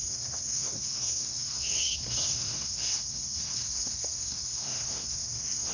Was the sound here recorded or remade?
remade